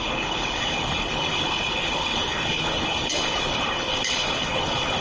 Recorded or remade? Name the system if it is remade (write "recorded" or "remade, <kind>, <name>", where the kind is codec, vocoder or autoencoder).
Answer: remade, codec, HILCodec